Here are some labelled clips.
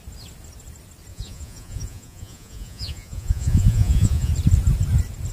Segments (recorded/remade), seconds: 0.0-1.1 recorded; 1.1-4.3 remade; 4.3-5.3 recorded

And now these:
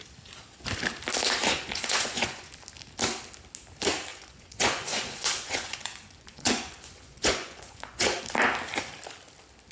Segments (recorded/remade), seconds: 0.0-1.4 recorded; 1.4-2.5 remade; 2.5-4.1 recorded; 4.1-8.2 remade; 8.2-9.7 recorded

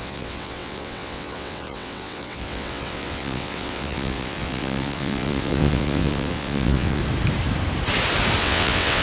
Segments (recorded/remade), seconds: 0.0-7.0 remade; 7.0-8.4 recorded; 8.4-9.0 remade

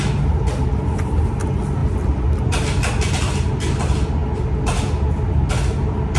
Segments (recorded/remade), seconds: 0.0-6.2 recorded

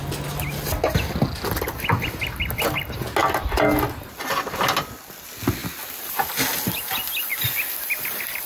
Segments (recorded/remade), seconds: 0.0-8.5 recorded

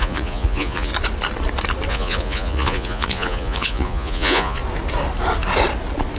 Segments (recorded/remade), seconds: 0.0-0.9 remade; 0.9-1.9 recorded; 1.9-4.6 remade; 4.6-6.2 recorded

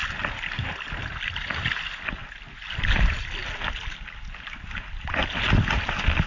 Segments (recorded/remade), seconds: 0.0-6.3 recorded